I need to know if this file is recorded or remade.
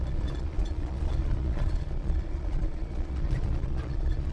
remade